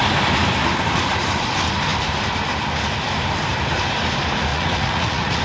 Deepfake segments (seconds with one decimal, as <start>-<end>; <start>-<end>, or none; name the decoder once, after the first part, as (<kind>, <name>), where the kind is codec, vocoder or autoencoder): 4.5-5.4 (vocoder, Vocos)